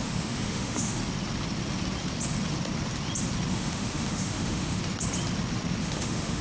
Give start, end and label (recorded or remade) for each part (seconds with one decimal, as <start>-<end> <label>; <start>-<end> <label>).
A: 0.0-1.0 remade; 1.0-3.5 recorded; 3.5-4.8 remade; 4.8-5.8 recorded; 5.8-6.4 remade